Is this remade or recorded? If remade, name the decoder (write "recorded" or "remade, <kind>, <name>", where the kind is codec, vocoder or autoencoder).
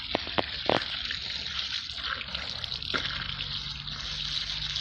recorded